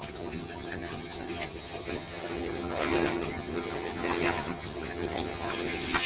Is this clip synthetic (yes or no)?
yes